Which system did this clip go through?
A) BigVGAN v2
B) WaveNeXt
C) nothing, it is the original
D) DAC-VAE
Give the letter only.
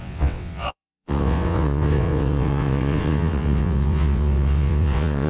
B